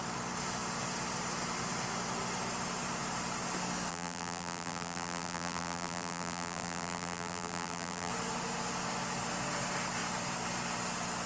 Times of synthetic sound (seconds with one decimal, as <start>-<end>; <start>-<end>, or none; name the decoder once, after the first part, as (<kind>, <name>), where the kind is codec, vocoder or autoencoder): 3.9-8.1 (vocoder, BigVGAN v2)